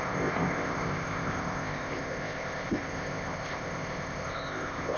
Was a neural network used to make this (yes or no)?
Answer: yes